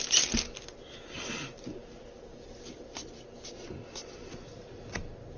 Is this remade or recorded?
recorded